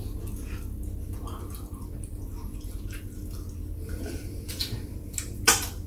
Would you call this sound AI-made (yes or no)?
no